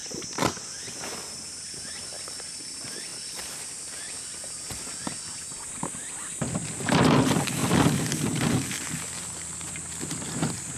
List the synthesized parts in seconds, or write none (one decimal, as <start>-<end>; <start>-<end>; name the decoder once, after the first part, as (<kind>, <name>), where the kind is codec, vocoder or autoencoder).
none